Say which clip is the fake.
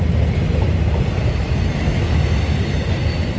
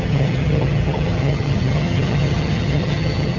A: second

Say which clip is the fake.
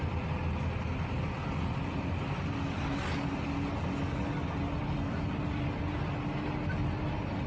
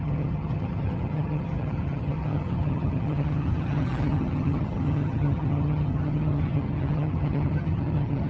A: second